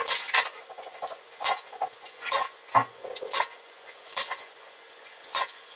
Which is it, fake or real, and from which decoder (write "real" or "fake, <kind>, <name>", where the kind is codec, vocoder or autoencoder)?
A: fake, vocoder, Vocos